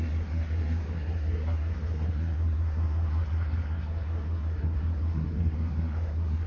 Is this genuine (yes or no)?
no